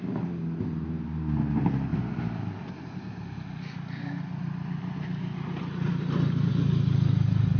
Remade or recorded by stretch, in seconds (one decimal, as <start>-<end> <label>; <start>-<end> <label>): 0.0-7.6 recorded